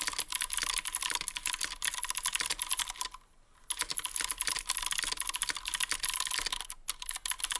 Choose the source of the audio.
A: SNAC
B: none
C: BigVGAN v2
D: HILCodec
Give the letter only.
B